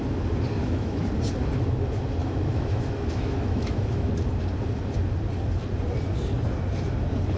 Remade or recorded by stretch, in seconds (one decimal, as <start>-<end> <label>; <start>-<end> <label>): 0.0-0.6 recorded; 0.6-1.1 remade; 1.1-2.2 recorded; 2.2-4.1 remade; 4.1-7.4 recorded